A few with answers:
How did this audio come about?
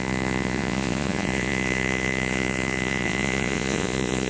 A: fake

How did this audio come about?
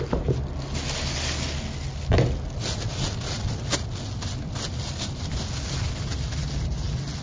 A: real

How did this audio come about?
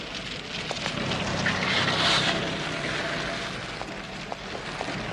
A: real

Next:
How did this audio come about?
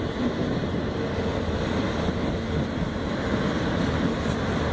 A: real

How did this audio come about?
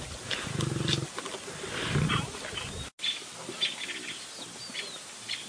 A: real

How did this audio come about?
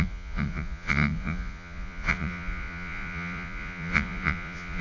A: fake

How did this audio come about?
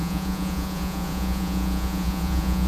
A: fake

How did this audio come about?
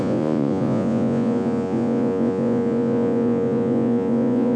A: fake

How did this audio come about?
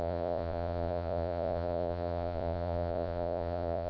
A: fake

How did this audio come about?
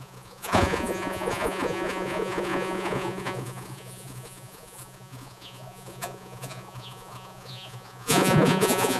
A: fake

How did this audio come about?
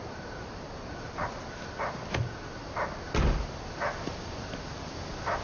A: real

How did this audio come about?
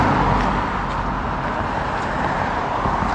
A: real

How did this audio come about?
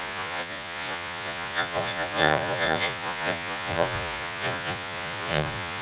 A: fake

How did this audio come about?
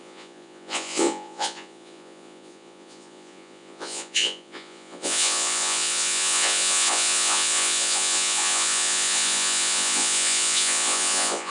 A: fake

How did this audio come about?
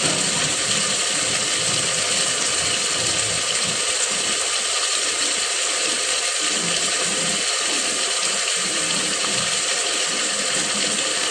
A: real